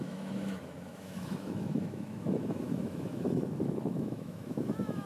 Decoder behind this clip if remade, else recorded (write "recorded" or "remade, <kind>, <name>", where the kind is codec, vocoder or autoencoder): remade, autoencoder, DAC-VAE